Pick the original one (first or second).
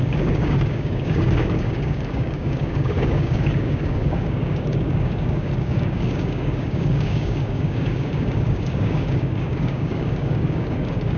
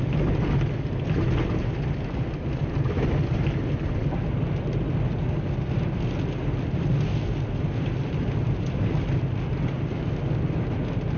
second